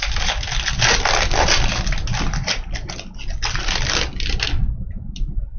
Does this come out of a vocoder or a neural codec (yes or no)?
no